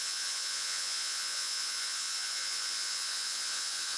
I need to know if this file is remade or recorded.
remade